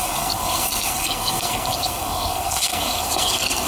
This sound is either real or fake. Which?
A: fake